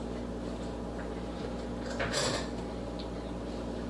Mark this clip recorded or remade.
recorded